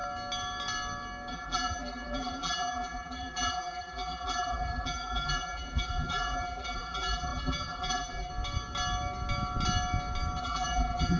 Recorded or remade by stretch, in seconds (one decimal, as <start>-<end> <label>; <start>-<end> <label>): 0.0-1.3 recorded; 1.3-8.3 remade; 8.3-10.4 recorded; 10.4-11.2 remade